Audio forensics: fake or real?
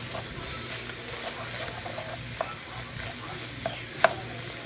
real